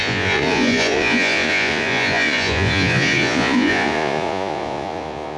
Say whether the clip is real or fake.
fake